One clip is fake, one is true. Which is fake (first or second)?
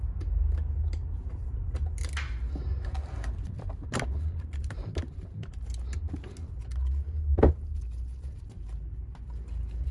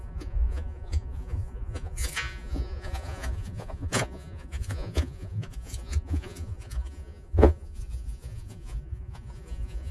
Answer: second